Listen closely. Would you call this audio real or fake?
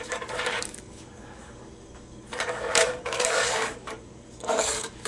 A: fake